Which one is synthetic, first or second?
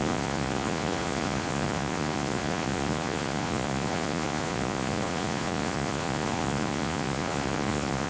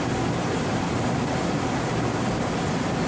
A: first